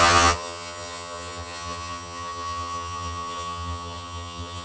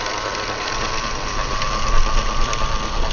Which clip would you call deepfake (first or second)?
first